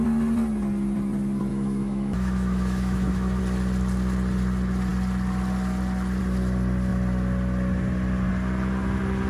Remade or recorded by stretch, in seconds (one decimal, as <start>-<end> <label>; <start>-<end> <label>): 0.0-1.5 recorded; 1.5-3.4 remade; 3.4-9.3 recorded